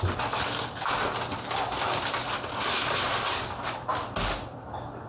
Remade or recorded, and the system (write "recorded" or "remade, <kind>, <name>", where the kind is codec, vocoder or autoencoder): recorded